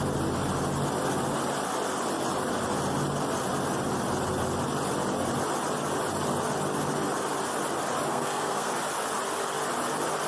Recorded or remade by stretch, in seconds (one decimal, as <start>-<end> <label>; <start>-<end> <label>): 0.0-8.1 recorded; 8.1-8.7 remade; 8.7-10.3 recorded

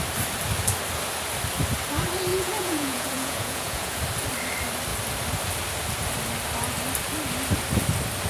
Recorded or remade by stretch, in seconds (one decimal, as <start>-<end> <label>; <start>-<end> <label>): 0.0-2.3 recorded; 2.3-4.0 remade; 4.0-8.3 recorded

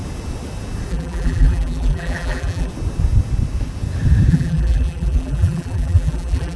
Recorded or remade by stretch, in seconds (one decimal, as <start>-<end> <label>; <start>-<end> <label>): 0.0-0.9 recorded; 0.9-2.7 remade; 2.7-4.3 recorded; 4.3-6.6 remade

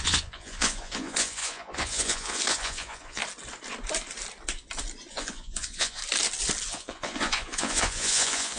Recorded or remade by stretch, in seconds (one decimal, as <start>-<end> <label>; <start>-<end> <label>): 0.0-3.2 remade; 3.2-5.1 recorded; 5.1-6.0 remade; 6.0-6.7 recorded; 6.7-8.6 remade

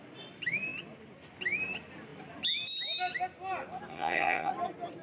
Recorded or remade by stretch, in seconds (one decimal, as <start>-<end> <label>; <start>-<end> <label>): 0.0-3.9 recorded; 3.9-4.5 remade; 4.5-5.0 recorded

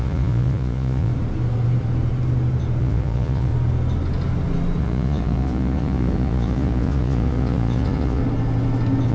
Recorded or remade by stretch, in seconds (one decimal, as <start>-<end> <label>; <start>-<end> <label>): 0.0-1.1 remade; 1.1-2.8 recorded; 2.8-3.5 remade; 3.5-4.8 recorded; 4.8-8.2 remade; 8.2-9.1 recorded

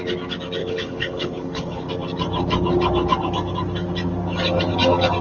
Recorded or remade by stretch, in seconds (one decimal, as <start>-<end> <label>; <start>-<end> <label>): 0.0-0.6 recorded; 0.6-1.9 remade; 1.9-5.2 recorded

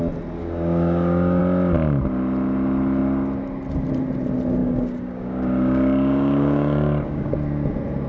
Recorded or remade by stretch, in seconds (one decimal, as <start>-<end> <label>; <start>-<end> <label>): 0.0-0.4 recorded; 0.4-1.4 remade; 1.4-4.6 recorded; 4.6-7.3 remade; 7.3-8.1 recorded